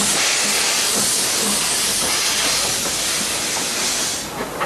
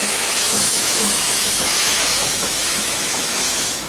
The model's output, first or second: second